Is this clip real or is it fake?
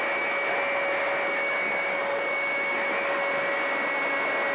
real